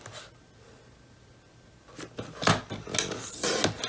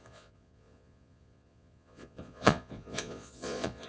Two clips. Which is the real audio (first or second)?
first